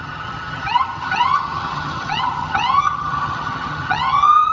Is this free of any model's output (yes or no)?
no